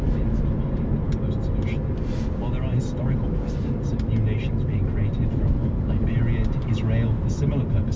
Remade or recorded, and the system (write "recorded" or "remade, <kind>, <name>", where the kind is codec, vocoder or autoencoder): recorded